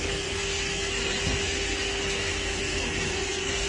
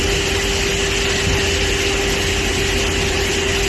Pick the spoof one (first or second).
first